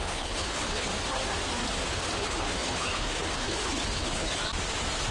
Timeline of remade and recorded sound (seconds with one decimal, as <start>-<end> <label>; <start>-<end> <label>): 0.0-0.9 remade; 0.9-1.9 recorded; 1.9-4.4 remade; 4.4-5.1 recorded